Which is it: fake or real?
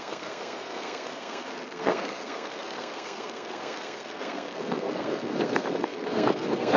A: fake